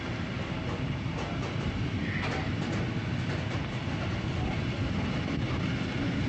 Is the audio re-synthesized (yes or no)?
no